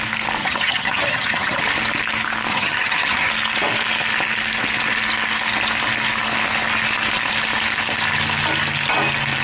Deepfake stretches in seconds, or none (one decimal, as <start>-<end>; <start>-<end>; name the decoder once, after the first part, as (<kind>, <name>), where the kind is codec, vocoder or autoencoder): 0.4-1.6 (vocoder, HiFi-GAN); 2.5-3.3